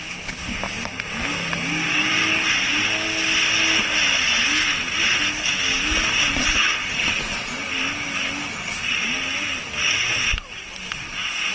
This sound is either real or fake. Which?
real